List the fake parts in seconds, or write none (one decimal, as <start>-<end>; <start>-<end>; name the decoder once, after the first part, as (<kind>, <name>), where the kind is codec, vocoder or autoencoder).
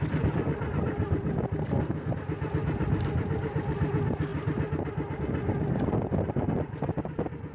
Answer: 1.6-2.1 (codec, SNAC)